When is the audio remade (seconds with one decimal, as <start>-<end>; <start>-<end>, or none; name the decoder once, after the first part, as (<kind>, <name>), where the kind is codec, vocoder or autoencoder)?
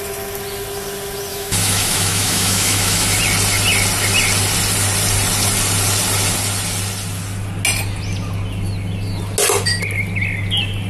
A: 1.3-3.2 (autoencoder, DAC-VAE)